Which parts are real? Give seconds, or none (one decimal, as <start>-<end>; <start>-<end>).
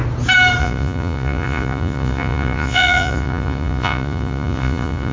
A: 0.0-0.6